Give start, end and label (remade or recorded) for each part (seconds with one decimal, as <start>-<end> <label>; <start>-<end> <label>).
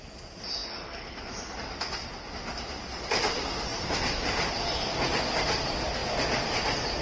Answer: 0.0-7.0 recorded